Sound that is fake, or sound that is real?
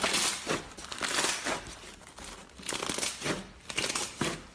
real